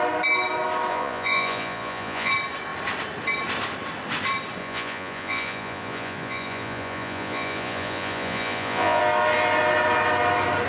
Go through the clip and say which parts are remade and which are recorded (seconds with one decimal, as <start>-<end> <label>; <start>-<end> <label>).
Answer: 0.0-0.9 recorded; 0.9-2.3 remade; 2.3-4.6 recorded; 4.6-9.0 remade; 9.0-10.7 recorded